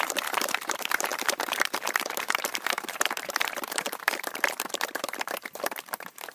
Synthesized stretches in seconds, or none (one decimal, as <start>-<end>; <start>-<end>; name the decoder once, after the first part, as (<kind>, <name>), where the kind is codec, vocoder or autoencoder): 0.0-6.3 (vocoder, BigVGAN v2)